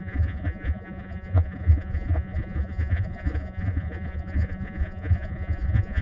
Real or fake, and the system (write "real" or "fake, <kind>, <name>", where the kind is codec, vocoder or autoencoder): fake, vocoder, Vocos